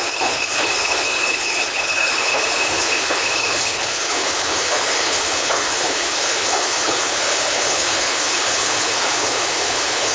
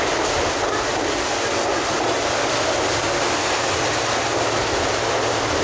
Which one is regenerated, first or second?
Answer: first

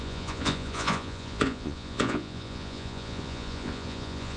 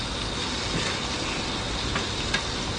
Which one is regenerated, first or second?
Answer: first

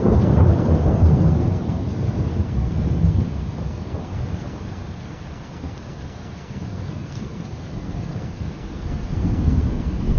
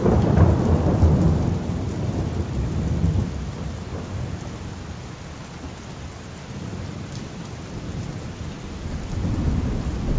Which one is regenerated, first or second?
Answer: first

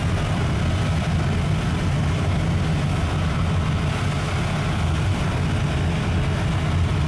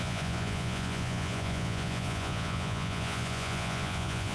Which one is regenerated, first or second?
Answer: second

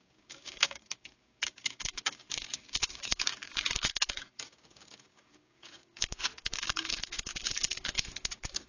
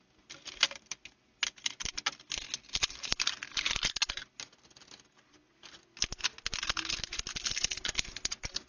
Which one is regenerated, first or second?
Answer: first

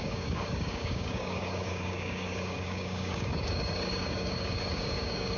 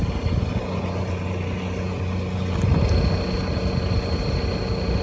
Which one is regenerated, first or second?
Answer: first